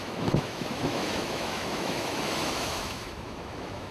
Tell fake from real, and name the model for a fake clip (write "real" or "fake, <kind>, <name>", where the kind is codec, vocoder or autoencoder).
fake, autoencoder, DAC-VAE